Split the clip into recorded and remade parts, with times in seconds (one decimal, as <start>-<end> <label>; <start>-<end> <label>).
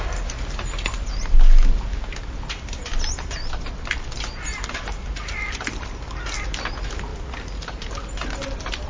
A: 0.0-8.9 recorded